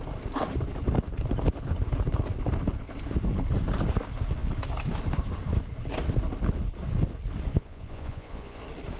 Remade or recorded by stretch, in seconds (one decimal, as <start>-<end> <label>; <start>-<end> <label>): 0.0-7.5 recorded; 7.5-8.6 remade; 8.6-9.0 recorded